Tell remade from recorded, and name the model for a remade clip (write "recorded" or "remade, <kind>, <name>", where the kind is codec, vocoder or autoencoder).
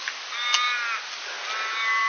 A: recorded